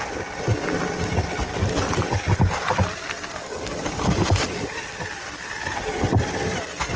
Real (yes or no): no